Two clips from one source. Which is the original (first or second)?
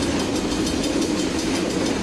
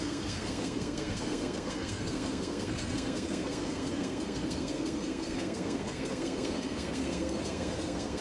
first